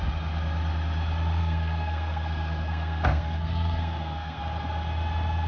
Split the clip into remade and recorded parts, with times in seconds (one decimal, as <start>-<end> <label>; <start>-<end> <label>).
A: 0.0-1.4 recorded; 1.4-4.4 remade; 4.4-5.5 recorded